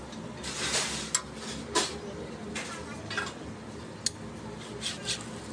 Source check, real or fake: real